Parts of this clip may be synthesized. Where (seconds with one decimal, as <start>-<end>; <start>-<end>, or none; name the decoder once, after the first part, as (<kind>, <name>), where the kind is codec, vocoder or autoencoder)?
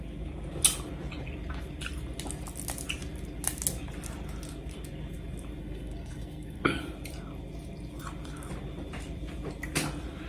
5.6-6.8 (codec, SNAC)